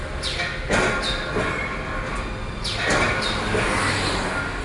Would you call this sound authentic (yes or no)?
yes